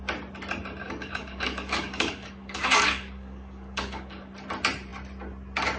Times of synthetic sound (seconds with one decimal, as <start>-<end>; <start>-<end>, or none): 0.8-4.3

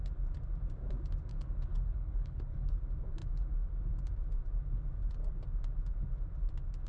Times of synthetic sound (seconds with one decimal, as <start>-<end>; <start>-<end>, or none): 1.3-2.8